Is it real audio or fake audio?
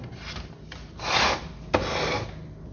real